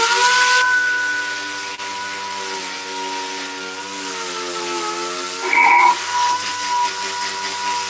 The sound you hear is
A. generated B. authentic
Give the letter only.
B